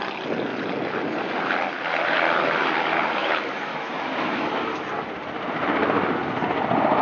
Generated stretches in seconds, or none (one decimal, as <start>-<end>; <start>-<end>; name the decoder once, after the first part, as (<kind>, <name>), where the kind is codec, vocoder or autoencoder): 3.2-4.9 (autoencoder, DAC-VAE)